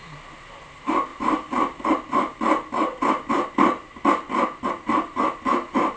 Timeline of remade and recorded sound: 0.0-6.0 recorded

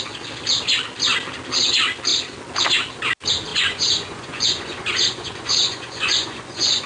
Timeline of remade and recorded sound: 0.0-3.5 recorded; 3.5-6.9 remade

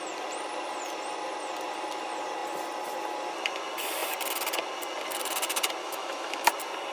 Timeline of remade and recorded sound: 0.0-5.8 recorded; 5.8-6.5 remade; 6.5-6.9 recorded

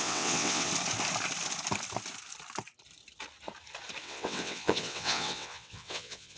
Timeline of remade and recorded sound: 0.0-0.7 remade; 0.7-4.0 recorded; 4.0-6.4 remade